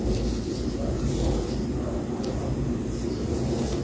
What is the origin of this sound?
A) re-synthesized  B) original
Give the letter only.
B